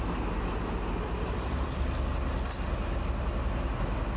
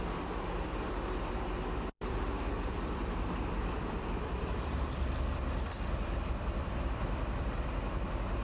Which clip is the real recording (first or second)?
first